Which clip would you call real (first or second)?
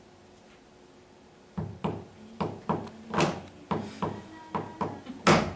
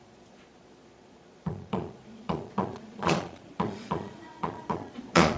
first